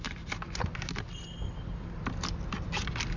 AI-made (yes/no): no